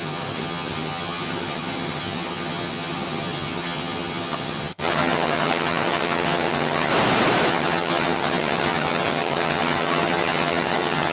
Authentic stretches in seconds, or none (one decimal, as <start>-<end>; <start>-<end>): 6.9-7.5